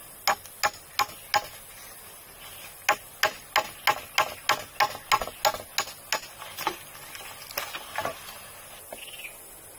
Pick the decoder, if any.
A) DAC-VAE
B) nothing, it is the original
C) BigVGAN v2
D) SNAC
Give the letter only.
B